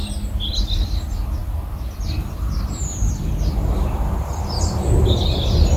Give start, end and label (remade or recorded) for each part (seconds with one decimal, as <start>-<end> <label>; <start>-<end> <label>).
0.0-5.8 recorded